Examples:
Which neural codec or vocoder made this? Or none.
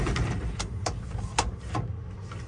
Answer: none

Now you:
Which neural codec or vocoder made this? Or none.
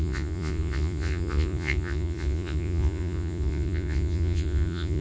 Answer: vocoder, Vocos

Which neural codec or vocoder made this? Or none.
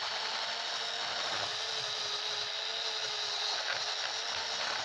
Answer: none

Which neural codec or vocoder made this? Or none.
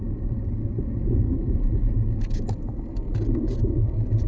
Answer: none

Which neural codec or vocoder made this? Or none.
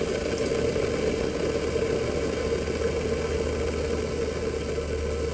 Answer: none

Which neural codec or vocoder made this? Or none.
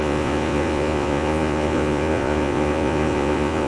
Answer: vocoder, Vocos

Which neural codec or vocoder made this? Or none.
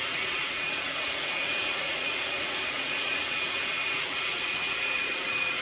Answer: vocoder, Vocos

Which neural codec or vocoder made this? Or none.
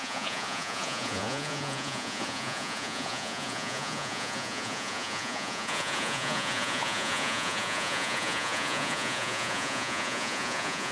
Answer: vocoder, Vocos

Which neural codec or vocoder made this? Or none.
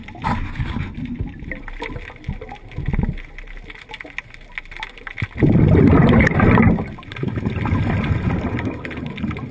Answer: none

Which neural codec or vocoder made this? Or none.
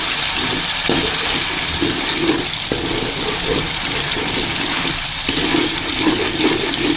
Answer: none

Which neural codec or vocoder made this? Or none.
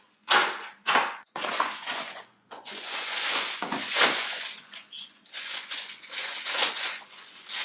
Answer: vocoder, Vocos